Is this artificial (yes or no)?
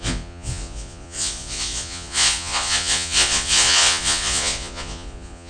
yes